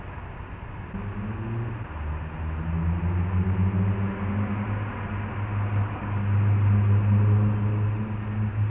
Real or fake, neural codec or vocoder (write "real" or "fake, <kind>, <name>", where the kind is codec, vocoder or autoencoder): real